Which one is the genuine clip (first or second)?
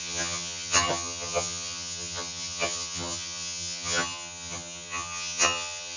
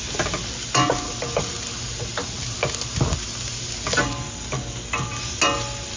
second